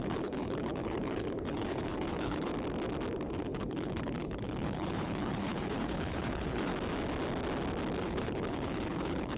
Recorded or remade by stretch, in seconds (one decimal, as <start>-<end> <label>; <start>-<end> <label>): 0.0-2.5 remade; 2.5-3.3 recorded; 3.3-6.7 remade; 6.7-8.0 recorded; 8.0-9.4 remade